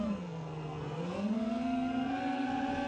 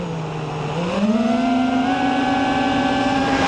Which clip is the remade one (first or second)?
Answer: first